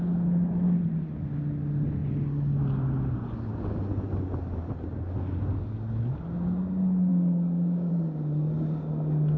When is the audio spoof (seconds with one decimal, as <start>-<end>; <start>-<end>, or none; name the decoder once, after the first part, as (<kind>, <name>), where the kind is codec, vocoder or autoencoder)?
7.1-7.9 (codec, DAC)